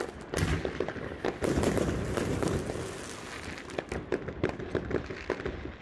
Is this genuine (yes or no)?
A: yes